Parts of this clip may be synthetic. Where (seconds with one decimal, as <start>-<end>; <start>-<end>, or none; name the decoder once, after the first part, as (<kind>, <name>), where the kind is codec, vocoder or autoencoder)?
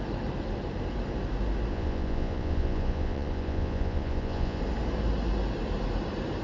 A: 1.7-4.6 (vocoder, Vocos)